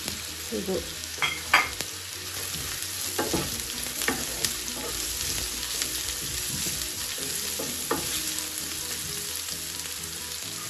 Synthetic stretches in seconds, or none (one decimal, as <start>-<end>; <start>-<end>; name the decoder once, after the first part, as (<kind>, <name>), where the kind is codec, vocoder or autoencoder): 1.0-1.5 (autoencoder, DAC-VAE)